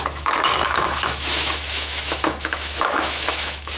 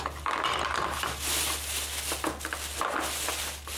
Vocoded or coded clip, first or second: first